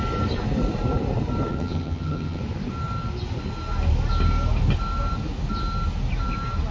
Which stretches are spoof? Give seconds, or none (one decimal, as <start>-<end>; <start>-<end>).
1.5-2.4